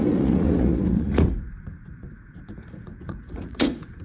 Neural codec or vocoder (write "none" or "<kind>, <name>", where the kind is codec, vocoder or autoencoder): vocoder, Vocos